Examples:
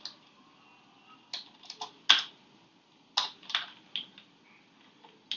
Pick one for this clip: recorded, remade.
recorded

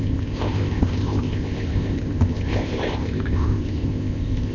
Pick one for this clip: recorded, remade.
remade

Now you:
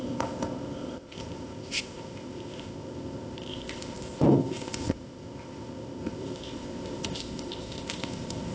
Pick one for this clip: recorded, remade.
remade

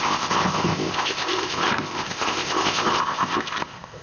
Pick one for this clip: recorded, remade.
remade